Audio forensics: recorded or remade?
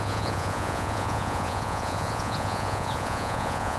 remade